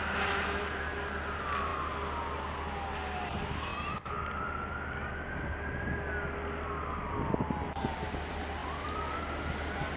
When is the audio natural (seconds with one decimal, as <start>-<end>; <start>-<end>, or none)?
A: 0.0-8.6; 9.2-10.0